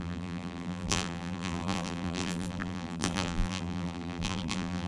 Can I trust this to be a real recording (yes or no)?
no